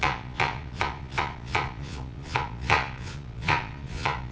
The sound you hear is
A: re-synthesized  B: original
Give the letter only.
A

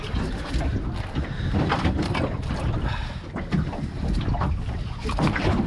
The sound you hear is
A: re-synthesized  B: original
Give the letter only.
B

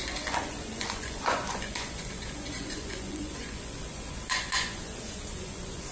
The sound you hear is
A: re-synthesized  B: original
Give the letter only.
A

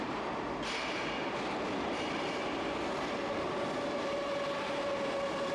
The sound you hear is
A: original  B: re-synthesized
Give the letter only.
A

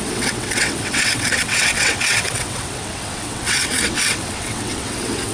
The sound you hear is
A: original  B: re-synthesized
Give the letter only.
B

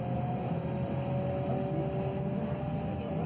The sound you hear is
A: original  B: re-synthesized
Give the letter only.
A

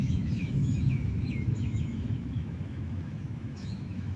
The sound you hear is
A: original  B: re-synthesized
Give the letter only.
B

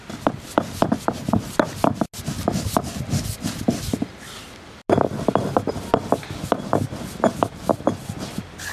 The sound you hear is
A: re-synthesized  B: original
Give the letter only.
B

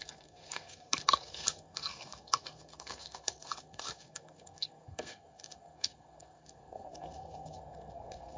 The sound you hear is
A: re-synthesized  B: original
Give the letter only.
A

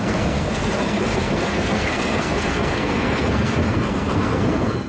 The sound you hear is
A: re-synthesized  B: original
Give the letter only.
A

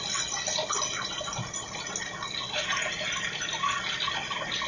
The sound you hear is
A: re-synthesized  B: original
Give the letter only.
B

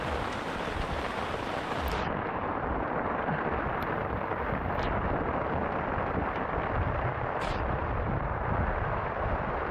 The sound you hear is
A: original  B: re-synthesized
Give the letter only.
A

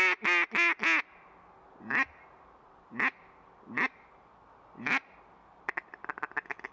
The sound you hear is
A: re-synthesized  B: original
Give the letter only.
B